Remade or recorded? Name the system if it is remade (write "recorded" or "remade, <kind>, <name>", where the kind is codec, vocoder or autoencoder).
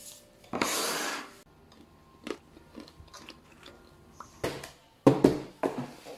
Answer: recorded